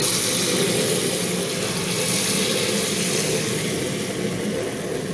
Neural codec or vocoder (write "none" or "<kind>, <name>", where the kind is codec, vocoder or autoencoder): none